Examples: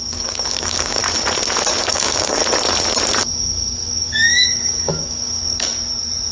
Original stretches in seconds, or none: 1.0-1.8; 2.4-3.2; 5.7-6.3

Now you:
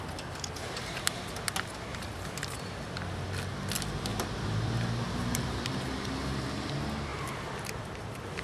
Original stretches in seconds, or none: 0.0-1.9; 2.6-4.1; 5.7-7.1

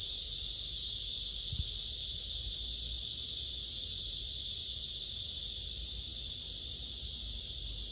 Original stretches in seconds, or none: 0.0-7.9